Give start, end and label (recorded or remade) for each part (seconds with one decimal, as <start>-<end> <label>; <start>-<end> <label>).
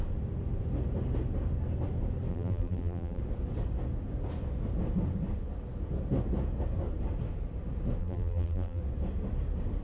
0.0-2.3 recorded; 2.3-3.2 remade; 3.2-8.0 recorded; 8.0-8.8 remade; 8.8-9.8 recorded